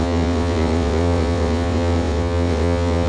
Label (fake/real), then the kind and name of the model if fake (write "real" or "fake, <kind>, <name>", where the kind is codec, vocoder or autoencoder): fake, vocoder, WaveNeXt